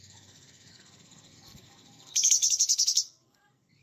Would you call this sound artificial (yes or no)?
yes